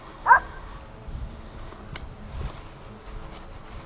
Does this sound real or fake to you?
real